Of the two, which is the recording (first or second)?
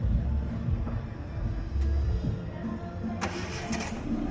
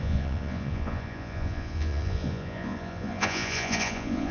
first